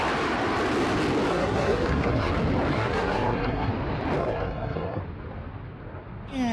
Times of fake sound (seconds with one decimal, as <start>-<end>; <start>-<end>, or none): 1.3-2.3; 2.7-3.7; 4.2-5.0